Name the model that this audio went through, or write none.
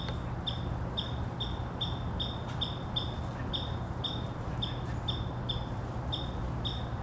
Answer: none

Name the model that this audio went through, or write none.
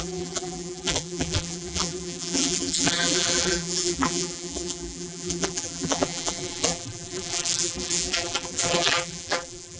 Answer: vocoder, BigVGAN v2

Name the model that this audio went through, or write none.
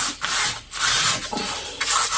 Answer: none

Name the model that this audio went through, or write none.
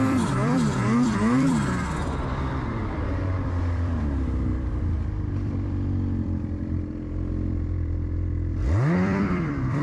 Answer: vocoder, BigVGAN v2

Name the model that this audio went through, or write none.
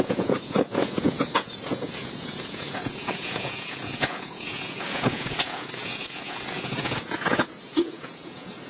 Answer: vocoder, Vocos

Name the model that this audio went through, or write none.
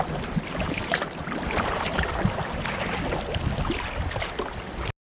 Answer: none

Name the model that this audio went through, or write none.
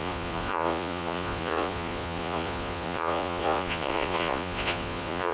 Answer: vocoder, Vocos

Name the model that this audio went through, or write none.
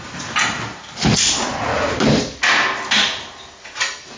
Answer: none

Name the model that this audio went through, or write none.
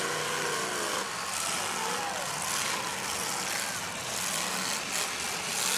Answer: none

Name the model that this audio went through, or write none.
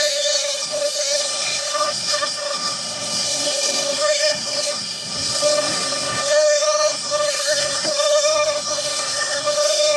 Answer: codec, SNAC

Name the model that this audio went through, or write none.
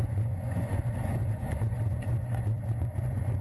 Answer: vocoder, Vocos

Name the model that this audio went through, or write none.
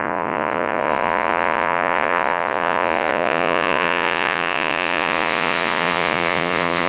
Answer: vocoder, Vocos